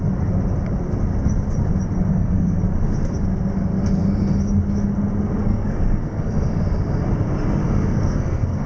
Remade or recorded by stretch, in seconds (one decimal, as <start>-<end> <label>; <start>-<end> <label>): 0.0-2.1 recorded; 2.1-2.6 remade; 2.6-5.4 recorded; 5.4-6.6 remade; 6.6-7.6 recorded; 7.6-8.7 remade